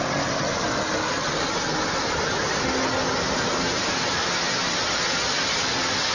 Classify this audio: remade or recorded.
recorded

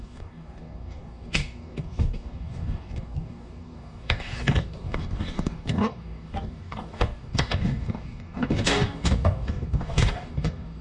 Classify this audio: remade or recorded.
remade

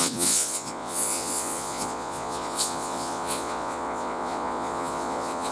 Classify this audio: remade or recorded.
remade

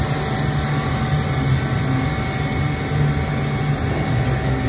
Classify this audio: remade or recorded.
recorded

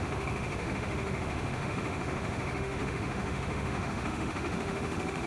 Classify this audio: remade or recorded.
remade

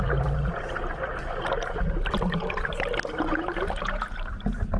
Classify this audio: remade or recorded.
remade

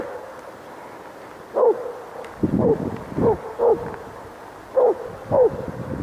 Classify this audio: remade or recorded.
recorded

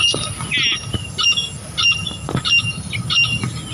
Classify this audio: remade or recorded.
recorded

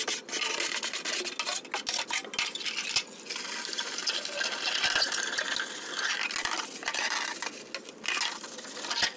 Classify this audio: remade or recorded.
recorded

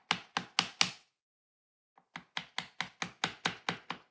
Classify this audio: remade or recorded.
recorded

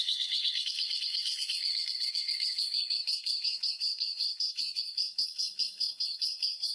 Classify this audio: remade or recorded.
remade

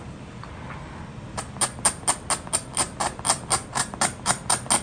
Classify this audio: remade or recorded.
recorded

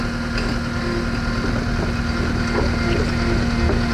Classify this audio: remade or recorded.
recorded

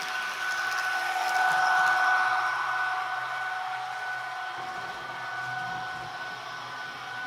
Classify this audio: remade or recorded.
recorded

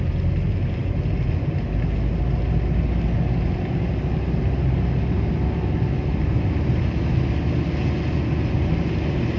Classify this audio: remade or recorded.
recorded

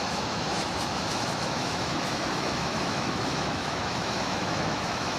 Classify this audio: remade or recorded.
remade